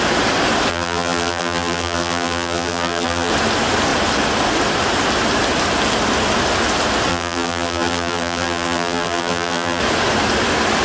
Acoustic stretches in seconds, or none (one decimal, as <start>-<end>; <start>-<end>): 0.0-0.7; 3.3-7.1; 9.8-10.8